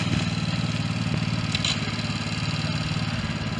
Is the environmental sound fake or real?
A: real